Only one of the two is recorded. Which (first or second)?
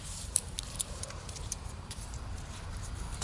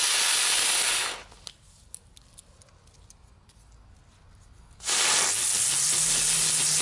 second